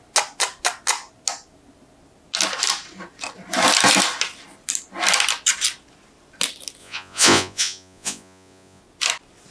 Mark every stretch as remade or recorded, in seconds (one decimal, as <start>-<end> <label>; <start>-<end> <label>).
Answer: 0.0-6.8 recorded; 6.8-8.8 remade; 8.8-9.5 recorded